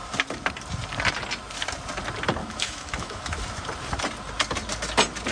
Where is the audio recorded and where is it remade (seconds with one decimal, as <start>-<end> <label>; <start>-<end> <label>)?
0.0-2.4 recorded; 2.4-3.4 remade; 3.4-5.3 recorded